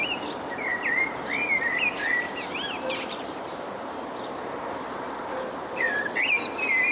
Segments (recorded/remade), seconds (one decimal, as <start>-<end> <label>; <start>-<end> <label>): 0.0-0.7 recorded; 0.7-4.8 remade; 4.8-6.9 recorded